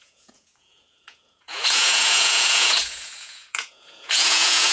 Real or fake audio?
fake